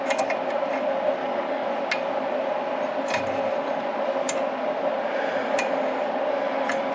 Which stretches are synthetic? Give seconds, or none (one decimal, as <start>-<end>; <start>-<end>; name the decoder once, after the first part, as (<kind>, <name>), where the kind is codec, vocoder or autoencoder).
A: 1.2-1.7 (codec, DAC)